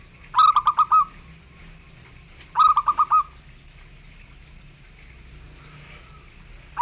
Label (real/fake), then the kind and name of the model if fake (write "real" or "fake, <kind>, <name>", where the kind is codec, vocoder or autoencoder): real